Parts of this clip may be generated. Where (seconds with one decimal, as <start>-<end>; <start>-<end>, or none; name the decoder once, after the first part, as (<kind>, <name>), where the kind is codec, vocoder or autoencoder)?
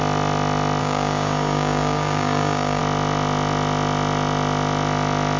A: 0.8-2.8 (codec, DAC)